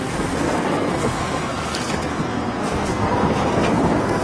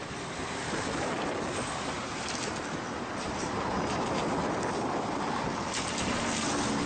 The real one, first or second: second